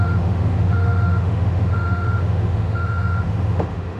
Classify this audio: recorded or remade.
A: remade